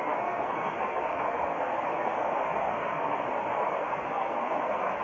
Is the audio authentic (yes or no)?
no